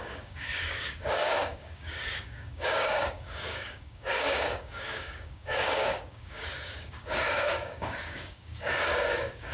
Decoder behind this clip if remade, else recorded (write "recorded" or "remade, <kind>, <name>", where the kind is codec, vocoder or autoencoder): remade, codec, DAC